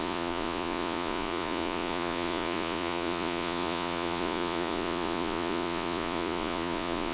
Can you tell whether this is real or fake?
fake